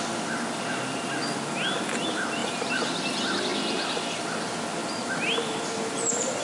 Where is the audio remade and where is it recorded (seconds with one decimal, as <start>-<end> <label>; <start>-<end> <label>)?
0.0-2.4 recorded; 2.4-2.9 remade; 2.9-4.8 recorded; 4.8-6.4 remade